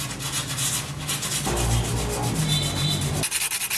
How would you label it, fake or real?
real